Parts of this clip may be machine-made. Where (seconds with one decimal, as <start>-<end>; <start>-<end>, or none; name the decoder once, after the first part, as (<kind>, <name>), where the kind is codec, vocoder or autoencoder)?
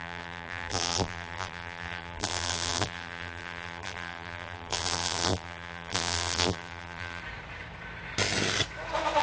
0.0-7.2 (vocoder, BigVGAN v2)